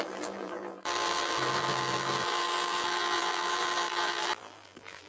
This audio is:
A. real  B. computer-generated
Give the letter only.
B